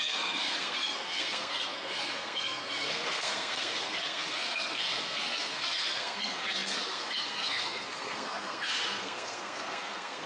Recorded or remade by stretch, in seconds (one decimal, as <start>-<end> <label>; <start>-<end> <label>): 0.0-10.3 remade

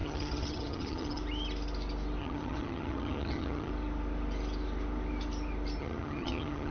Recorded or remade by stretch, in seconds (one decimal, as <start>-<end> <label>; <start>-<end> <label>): 0.0-1.2 remade; 1.2-2.2 recorded; 2.2-3.7 remade; 3.7-5.8 recorded; 5.8-6.7 remade

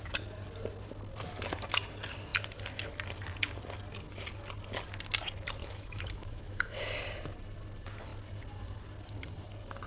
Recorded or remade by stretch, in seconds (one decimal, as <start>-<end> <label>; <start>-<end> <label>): 0.0-5.6 recorded; 5.6-6.8 remade; 6.8-9.9 recorded

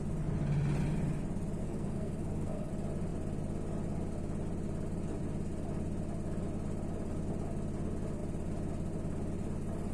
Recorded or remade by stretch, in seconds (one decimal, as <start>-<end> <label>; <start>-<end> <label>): 0.0-1.6 recorded; 1.6-2.7 remade; 2.7-9.9 recorded

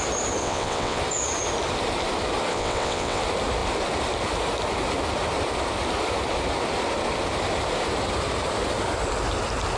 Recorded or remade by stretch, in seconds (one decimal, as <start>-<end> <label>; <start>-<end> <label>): 0.0-0.4 recorded; 0.4-1.0 remade; 1.0-2.5 recorded; 2.5-3.2 remade; 3.2-9.8 recorded

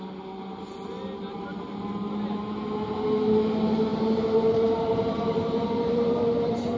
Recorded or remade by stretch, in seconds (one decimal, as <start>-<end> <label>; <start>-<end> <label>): 0.0-3.9 recorded; 3.9-6.8 remade

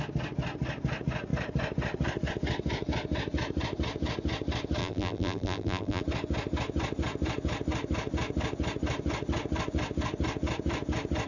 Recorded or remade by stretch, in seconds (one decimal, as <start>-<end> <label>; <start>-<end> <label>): 0.0-4.8 recorded; 4.8-6.0 remade; 6.0-11.3 recorded

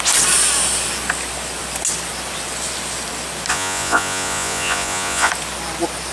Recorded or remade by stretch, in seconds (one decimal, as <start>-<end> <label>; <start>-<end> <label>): 0.0-3.5 recorded; 3.5-5.3 remade; 5.3-6.1 recorded